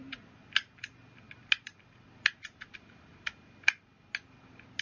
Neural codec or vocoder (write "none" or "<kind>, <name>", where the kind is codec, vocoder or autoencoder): none